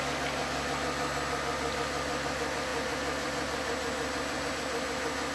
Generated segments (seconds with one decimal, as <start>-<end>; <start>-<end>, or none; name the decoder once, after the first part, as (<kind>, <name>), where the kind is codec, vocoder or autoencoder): none